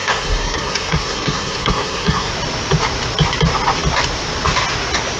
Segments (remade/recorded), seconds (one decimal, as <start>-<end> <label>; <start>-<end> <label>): 0.0-2.3 remade; 2.3-5.2 recorded